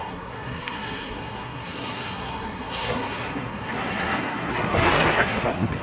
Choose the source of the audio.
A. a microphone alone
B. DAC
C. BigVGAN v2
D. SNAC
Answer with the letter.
D